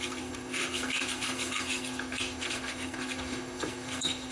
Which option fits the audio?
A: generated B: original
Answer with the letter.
A